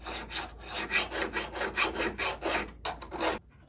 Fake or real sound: real